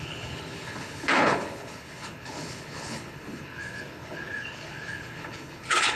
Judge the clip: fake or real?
fake